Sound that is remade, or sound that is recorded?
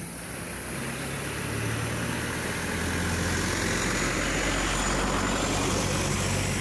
recorded